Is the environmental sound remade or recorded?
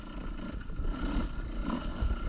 recorded